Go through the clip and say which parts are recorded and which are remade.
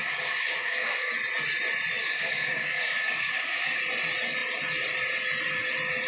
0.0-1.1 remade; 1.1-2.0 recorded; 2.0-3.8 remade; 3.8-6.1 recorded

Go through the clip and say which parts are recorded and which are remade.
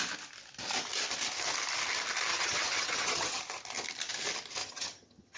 0.0-2.3 recorded; 2.3-3.4 remade; 3.4-4.6 recorded; 4.6-5.4 remade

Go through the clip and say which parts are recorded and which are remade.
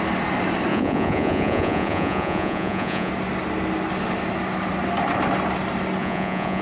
0.0-0.7 recorded; 0.7-3.1 remade; 3.1-6.0 recorded; 6.0-6.6 remade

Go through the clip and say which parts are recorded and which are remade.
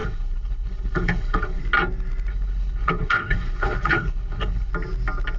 0.0-1.6 remade; 1.6-2.3 recorded; 2.3-4.7 remade; 4.7-5.4 recorded